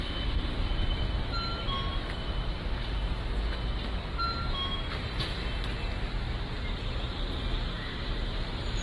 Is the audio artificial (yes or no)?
no